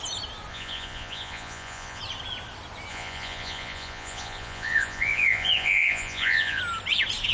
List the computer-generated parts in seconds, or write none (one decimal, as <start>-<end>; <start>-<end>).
0.5-2.0; 2.9-6.6

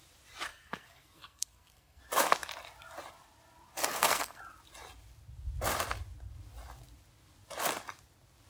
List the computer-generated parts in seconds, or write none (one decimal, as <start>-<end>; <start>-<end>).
0.5-2.0; 3.8-4.4

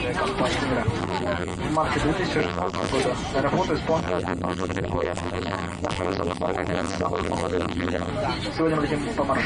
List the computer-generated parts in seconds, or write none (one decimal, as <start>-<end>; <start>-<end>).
1.0-1.6; 2.4-2.9; 4.0-8.1

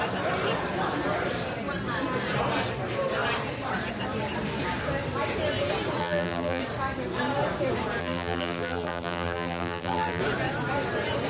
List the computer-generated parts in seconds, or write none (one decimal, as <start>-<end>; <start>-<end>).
6.0-6.6; 8.0-10.2

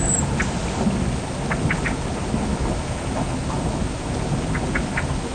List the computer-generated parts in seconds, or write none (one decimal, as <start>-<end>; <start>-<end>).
2.5-4.1

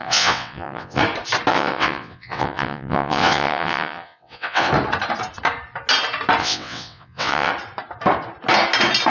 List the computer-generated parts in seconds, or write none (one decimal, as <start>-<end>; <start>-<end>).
0.0-1.0; 1.5-4.7; 6.4-7.5

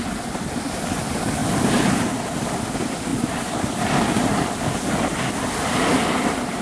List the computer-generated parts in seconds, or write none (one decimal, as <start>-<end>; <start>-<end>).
none

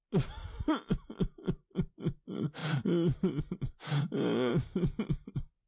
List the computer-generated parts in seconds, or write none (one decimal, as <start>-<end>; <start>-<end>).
3.9-4.5